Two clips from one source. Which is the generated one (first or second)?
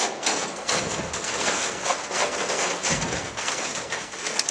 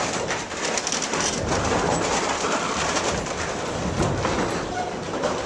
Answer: first